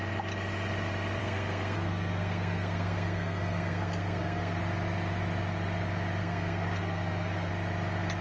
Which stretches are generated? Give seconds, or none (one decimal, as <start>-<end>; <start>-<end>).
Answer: 1.2-4.6; 6.2-7.5